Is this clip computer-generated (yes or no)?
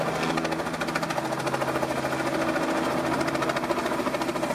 no